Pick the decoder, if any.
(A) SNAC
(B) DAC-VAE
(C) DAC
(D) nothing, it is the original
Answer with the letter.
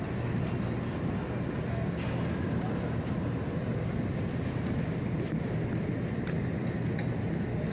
D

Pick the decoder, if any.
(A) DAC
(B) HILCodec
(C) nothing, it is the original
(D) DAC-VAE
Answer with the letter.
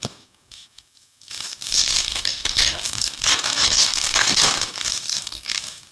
A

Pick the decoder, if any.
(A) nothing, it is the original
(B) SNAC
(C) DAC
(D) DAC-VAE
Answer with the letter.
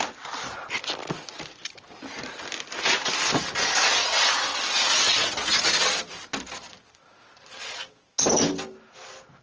A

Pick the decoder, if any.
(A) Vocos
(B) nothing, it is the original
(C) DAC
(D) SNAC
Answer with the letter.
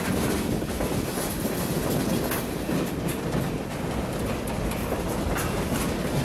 B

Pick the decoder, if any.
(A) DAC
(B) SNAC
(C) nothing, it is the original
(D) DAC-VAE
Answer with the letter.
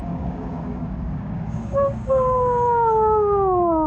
A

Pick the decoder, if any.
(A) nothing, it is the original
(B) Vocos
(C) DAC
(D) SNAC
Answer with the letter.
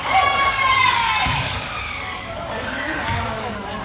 C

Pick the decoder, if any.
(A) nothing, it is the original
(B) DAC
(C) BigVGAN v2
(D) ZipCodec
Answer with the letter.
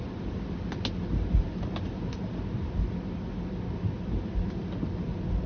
A